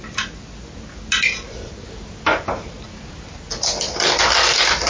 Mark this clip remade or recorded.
recorded